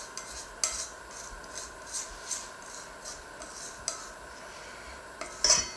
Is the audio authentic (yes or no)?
yes